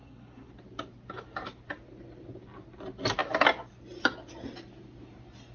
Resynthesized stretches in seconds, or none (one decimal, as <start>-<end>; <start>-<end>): 0.0-0.5